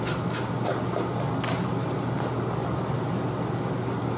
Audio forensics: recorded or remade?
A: recorded